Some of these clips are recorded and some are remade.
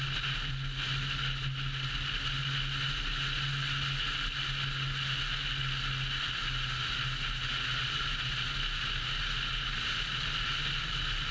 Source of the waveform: recorded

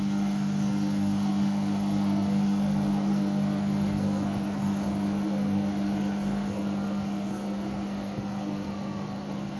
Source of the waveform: remade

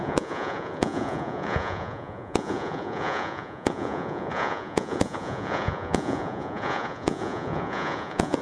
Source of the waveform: remade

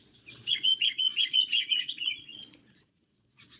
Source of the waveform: remade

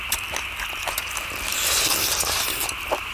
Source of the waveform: remade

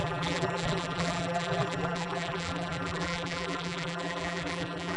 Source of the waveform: remade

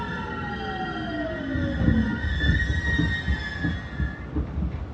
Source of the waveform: recorded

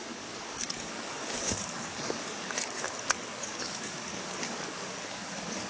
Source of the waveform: remade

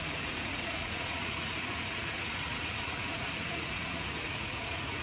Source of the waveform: remade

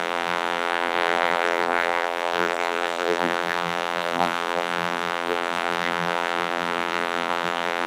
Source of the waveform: remade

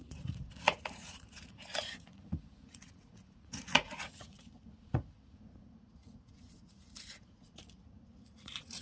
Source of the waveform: remade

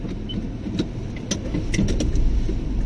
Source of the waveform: recorded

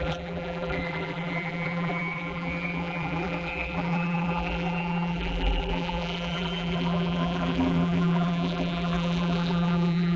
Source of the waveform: remade